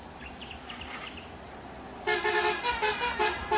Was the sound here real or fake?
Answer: real